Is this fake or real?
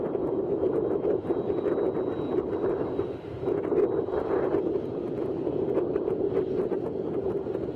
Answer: real